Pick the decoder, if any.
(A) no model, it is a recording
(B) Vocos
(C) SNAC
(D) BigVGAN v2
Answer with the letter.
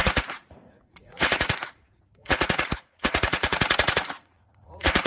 B